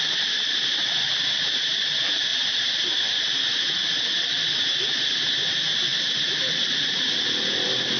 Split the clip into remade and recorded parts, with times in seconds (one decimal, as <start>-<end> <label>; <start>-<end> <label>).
0.0-8.0 recorded